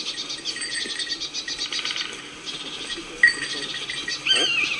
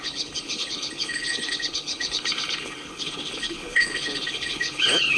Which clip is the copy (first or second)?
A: second